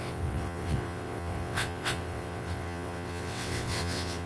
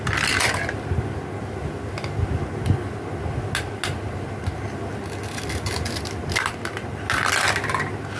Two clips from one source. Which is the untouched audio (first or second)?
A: second